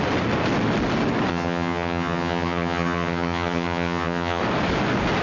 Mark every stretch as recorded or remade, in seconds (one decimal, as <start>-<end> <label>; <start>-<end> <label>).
0.0-1.3 recorded; 1.3-4.4 remade; 4.4-5.2 recorded